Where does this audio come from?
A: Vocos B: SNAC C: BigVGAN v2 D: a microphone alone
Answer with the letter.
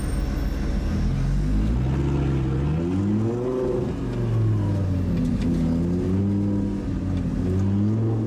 D